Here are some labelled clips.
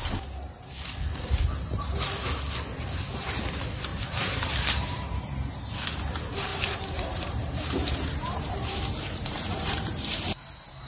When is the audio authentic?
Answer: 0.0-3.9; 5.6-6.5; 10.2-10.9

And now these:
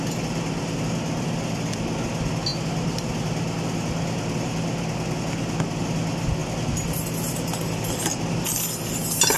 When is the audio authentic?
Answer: 0.0-9.4

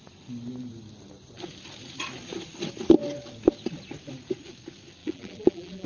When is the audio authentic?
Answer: 0.0-5.0

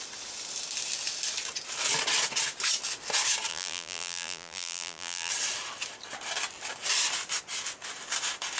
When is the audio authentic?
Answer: 0.0-3.5; 5.3-8.6

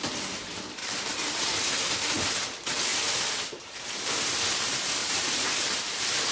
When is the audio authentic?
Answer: 0.0-0.8; 1.7-5.0; 5.5-6.3

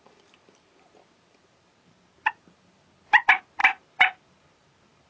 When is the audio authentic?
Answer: 0.0-1.4; 2.3-3.6

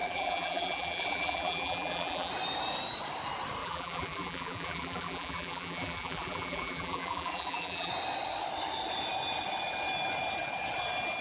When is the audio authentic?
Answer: 2.3-3.6; 7.9-11.2